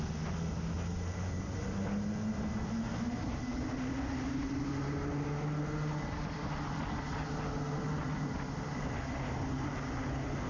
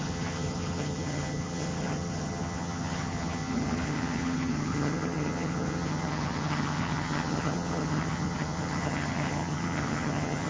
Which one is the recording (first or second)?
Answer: first